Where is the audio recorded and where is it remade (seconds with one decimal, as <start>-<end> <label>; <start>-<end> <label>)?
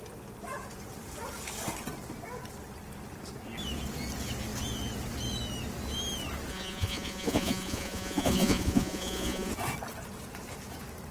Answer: 0.0-6.5 recorded; 6.5-9.5 remade; 9.5-11.1 recorded